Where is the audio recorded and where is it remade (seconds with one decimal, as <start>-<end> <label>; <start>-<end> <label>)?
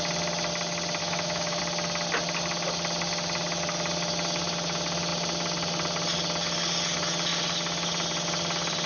0.0-1.0 recorded; 1.0-1.6 remade; 1.6-8.9 recorded